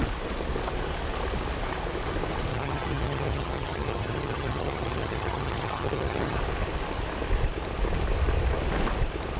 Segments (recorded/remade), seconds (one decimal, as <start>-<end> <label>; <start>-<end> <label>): 0.0-2.5 recorded; 2.5-6.4 remade; 6.4-9.4 recorded